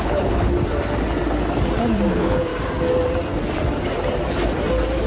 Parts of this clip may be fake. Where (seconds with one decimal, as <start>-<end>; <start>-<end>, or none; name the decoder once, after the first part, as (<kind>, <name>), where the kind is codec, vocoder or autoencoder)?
0.0-0.5 (codec, HILCodec); 2.1-2.5